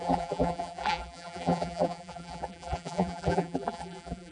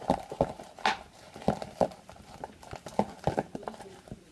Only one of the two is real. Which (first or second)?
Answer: second